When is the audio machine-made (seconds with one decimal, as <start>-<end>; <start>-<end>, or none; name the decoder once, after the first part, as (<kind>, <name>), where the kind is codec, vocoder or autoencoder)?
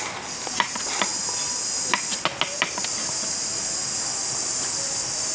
none